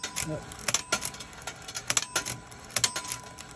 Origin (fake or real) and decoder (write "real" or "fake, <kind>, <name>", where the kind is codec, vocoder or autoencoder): real